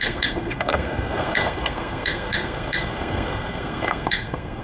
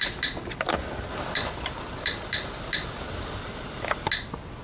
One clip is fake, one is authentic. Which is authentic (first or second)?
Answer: second